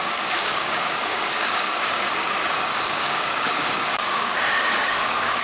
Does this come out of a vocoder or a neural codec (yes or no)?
yes